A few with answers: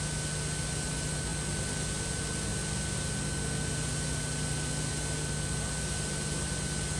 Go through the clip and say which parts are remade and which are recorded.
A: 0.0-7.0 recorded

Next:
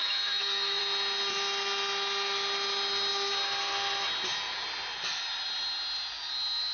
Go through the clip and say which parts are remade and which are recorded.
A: 0.0-0.8 remade; 0.8-6.7 recorded

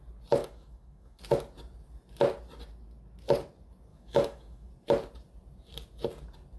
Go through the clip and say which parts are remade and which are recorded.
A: 0.0-0.4 recorded; 0.4-1.2 remade; 1.2-3.9 recorded; 3.9-4.7 remade; 4.7-6.6 recorded

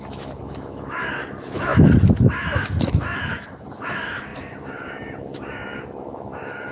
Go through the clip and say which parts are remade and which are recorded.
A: 0.0-6.7 remade

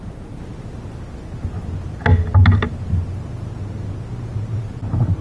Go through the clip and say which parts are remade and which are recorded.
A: 0.0-5.2 recorded